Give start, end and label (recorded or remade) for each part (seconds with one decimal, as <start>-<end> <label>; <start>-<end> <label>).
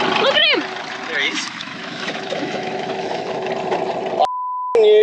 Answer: 0.0-1.2 recorded; 1.2-3.5 remade; 3.5-5.0 recorded